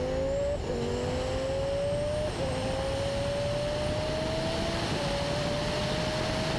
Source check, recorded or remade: recorded